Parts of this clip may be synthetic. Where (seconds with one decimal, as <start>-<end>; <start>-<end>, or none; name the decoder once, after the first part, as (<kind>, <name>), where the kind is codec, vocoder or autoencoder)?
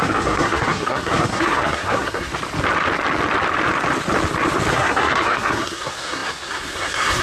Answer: 0.0-2.3 (codec, SNAC); 4.7-7.2